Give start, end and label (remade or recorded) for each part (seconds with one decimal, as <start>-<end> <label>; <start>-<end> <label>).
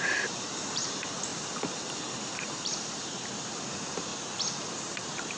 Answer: 0.0-1.3 remade; 1.3-2.1 recorded; 2.1-4.1 remade; 4.1-4.8 recorded; 4.8-5.4 remade